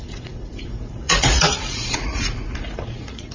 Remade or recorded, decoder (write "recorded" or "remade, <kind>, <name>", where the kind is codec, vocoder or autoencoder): remade, vocoder, Vocos